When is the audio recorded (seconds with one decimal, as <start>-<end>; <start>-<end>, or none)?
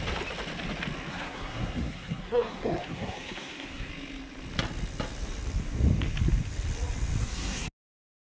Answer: 0.0-1.1; 3.9-7.2; 7.7-8.3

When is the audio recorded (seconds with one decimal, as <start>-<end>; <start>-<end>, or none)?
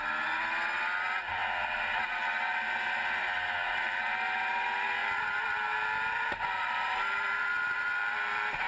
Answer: 0.0-5.0